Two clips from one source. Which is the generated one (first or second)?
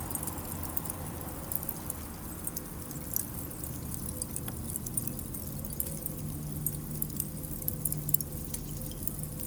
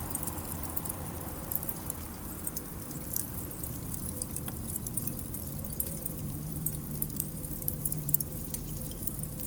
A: second